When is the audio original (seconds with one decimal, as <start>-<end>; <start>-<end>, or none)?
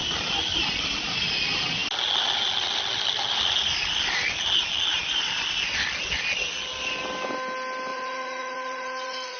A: 0.0-7.9